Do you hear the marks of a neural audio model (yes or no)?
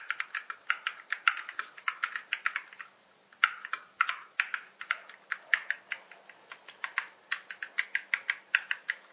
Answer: no